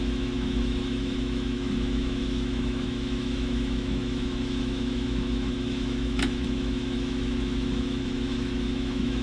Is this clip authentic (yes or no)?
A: no